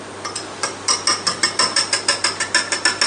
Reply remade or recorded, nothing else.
recorded